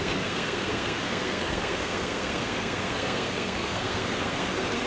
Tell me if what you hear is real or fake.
fake